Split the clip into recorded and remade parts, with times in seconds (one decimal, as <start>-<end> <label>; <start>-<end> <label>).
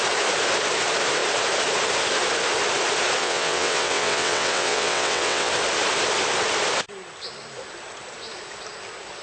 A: 0.0-3.2 recorded; 3.2-5.5 remade; 5.5-9.2 recorded